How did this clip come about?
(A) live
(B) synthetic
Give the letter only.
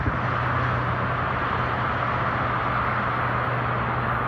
A